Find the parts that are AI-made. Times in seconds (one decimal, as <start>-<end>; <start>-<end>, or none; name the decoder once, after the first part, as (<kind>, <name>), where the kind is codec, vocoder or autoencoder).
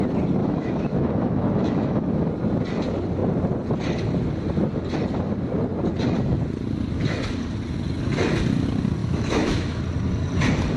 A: 0.4-2.3 (autoencoder, DAC-VAE); 9.0-9.8